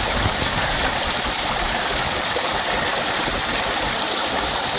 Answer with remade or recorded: remade